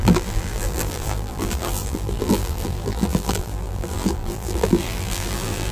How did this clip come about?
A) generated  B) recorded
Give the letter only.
A